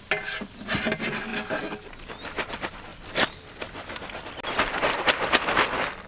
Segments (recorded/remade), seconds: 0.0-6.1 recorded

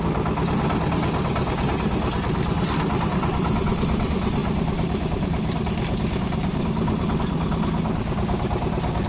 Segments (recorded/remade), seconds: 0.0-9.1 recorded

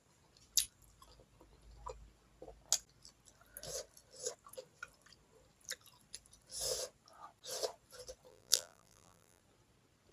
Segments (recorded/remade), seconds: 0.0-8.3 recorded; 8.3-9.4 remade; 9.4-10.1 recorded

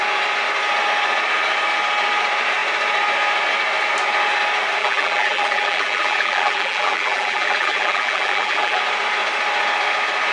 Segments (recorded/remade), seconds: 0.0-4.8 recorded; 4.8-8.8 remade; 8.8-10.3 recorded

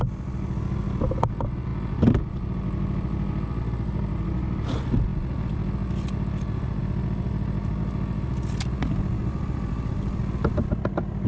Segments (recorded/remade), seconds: 0.0-9.2 recorded; 9.2-10.2 remade; 10.2-11.3 recorded